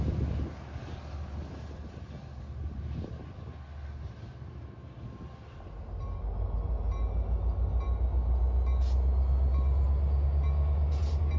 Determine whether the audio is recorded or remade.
recorded